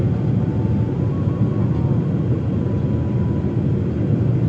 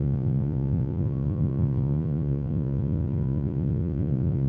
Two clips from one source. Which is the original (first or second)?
first